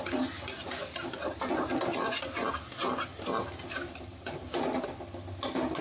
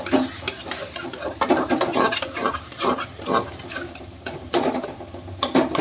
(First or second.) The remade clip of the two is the second